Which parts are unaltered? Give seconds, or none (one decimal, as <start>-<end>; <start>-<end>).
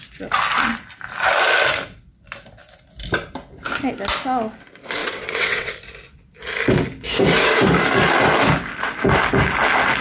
0.0-5.0; 5.7-10.0